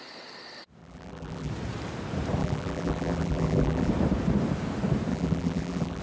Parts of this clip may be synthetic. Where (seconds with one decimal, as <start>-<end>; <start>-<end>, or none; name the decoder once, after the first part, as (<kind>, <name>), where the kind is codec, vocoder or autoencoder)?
0.8-1.5 (vocoder, BigVGAN v2); 2.4-3.9; 5.1-6.0